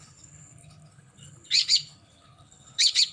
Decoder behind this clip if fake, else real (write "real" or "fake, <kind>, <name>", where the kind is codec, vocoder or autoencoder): fake, codec, HILCodec